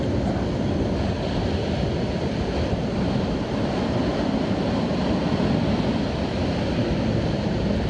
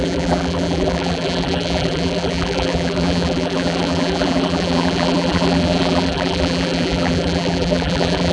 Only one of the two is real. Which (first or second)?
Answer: first